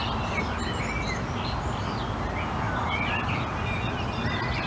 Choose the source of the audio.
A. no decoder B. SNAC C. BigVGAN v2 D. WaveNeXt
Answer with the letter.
A